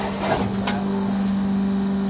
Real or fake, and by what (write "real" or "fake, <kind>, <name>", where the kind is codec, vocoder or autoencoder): real